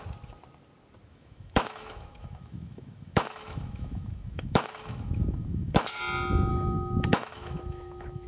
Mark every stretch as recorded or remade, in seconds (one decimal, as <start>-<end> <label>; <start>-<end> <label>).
0.0-1.1 recorded; 1.1-6.0 remade; 6.0-6.5 recorded; 6.5-8.3 remade